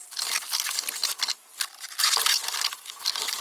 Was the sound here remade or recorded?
recorded